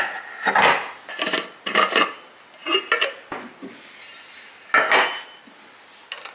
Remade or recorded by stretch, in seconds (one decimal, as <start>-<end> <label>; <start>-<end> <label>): 0.0-6.3 recorded